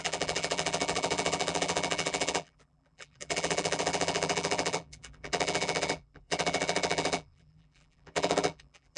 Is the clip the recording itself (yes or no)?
no